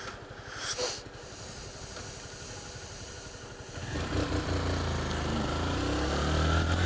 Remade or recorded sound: recorded